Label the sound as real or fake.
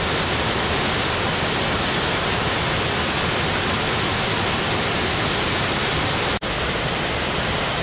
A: real